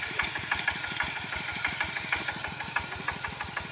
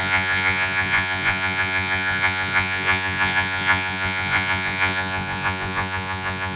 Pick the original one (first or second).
first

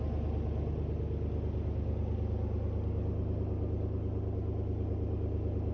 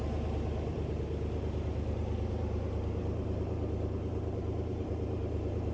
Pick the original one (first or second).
first